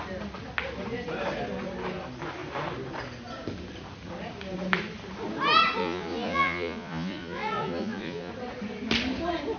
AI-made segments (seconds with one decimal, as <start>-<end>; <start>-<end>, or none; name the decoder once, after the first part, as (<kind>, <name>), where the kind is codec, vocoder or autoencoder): 5.8-8.3 (vocoder, Vocos)